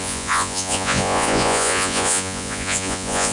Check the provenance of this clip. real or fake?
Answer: fake